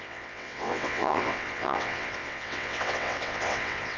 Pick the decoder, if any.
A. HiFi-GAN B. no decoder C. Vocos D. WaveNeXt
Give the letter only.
D